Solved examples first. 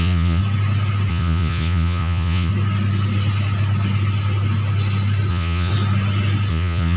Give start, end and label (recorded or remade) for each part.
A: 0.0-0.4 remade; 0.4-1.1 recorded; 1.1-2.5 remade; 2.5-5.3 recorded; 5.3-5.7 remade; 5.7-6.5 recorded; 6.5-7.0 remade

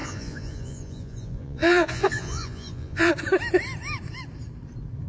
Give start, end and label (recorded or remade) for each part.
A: 0.0-3.1 remade; 3.1-5.1 recorded

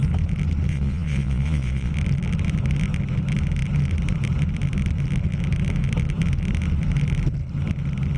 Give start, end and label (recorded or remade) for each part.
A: 0.0-0.7 recorded; 0.7-1.9 remade; 1.9-8.2 recorded

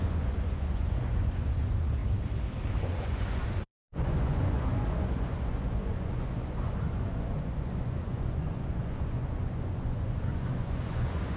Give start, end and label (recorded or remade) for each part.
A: 0.0-2.0 remade; 2.0-2.7 recorded; 2.7-11.4 remade

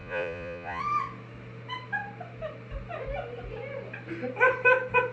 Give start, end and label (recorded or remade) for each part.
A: 0.0-0.8 remade; 0.8-5.1 recorded